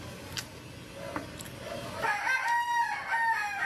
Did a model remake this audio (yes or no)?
no